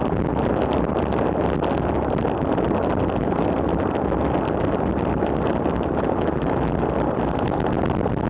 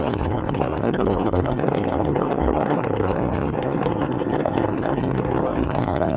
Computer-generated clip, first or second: second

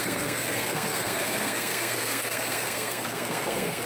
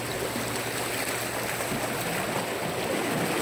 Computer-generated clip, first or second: first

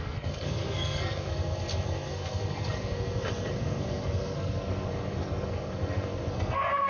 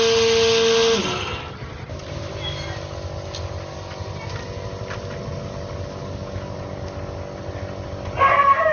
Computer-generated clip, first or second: first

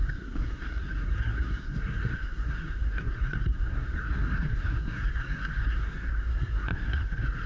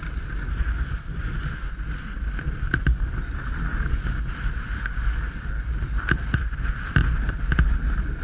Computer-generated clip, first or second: first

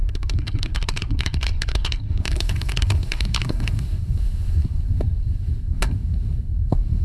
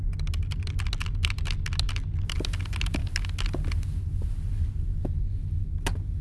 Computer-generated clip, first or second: first